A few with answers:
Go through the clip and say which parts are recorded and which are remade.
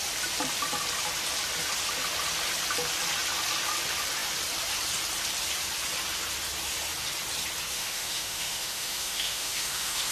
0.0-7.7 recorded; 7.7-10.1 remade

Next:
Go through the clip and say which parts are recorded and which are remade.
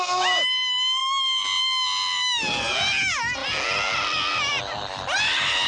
0.0-5.7 recorded